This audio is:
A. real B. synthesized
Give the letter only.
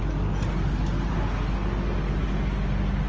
A